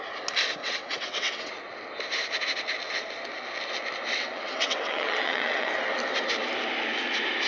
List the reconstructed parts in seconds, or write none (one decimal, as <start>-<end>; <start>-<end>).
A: 0.6-1.5; 4.1-5.7